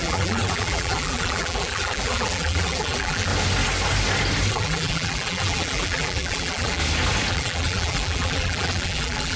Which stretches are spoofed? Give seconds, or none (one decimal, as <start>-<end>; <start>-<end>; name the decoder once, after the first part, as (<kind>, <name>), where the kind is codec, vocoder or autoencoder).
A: 0.0-3.3 (vocoder, BigVGAN v2); 4.5-6.8; 7.3-9.4